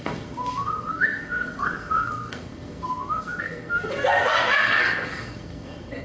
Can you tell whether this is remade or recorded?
remade